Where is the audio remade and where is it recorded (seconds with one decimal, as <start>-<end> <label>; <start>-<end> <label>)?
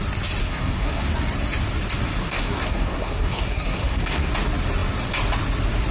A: 0.0-0.4 recorded; 0.4-1.0 remade; 1.0-2.2 recorded; 2.2-4.3 remade; 4.3-5.9 recorded